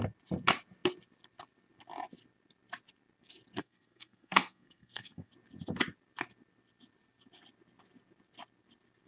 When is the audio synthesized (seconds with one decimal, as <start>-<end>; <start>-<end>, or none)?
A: 3.6-5.3